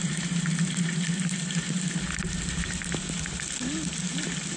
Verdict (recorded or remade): recorded